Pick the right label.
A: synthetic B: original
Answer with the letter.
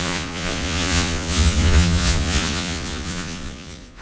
A